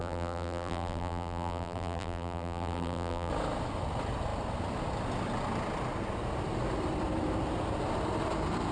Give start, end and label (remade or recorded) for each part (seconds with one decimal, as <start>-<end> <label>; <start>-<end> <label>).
0.0-3.3 remade; 3.3-8.7 recorded